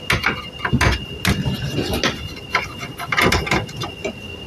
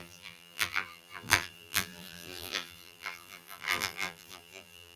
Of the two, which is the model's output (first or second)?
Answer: second